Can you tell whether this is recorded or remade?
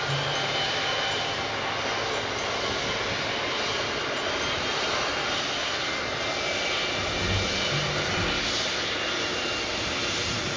recorded